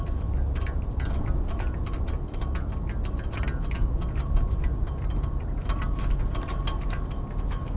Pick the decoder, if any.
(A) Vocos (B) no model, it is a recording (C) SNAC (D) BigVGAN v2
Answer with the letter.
B